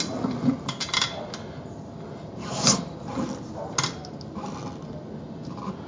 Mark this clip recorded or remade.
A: recorded